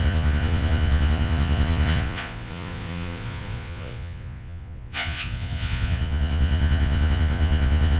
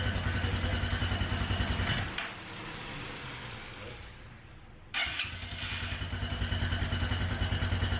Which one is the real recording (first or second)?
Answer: second